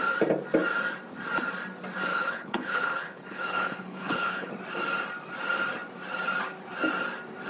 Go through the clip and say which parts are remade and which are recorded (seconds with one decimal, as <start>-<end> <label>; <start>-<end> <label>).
0.0-2.1 recorded; 2.1-4.5 remade; 4.5-7.5 recorded